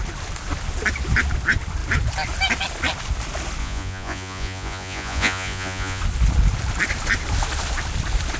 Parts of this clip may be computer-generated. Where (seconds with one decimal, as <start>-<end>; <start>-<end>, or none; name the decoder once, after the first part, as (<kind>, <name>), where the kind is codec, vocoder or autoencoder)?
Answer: 3.6-6.0 (vocoder, Vocos)